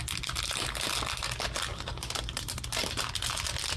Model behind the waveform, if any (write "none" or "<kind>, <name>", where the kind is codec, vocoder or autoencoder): none